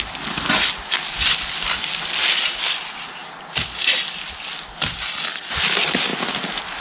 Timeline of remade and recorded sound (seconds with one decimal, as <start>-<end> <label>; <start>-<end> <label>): 0.0-6.8 recorded